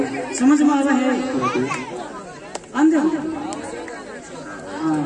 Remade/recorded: recorded